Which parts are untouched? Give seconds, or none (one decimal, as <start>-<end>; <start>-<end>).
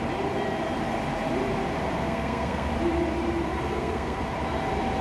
0.0-2.0; 2.7-3.5; 4.2-5.0